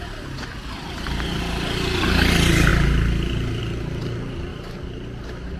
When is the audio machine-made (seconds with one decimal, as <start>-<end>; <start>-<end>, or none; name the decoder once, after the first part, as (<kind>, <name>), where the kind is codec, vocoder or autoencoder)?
none